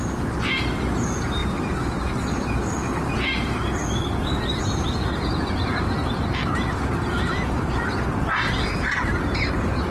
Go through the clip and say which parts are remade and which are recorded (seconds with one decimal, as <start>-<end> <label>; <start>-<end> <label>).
0.0-9.9 recorded